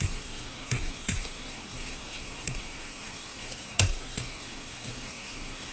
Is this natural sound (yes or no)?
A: no